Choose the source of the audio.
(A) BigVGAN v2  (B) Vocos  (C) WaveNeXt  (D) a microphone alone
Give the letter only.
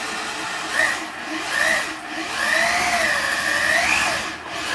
D